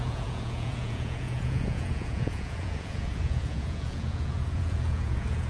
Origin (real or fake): fake